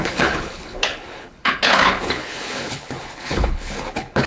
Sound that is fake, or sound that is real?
fake